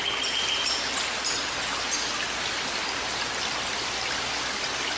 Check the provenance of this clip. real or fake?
real